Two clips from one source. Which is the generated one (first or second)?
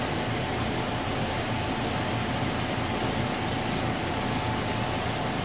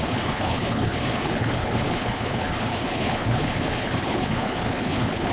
second